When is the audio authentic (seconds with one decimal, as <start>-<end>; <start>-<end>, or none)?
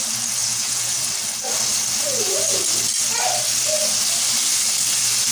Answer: 0.0-0.4; 1.1-5.3